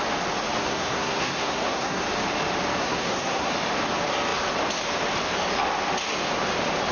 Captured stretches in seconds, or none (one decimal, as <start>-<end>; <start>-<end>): 0.0-0.6; 2.0-2.8; 3.5-6.9